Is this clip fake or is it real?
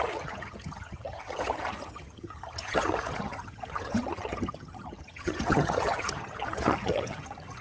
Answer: fake